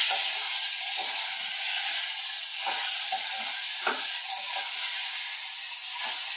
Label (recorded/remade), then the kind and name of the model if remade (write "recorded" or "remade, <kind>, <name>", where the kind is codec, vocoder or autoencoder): recorded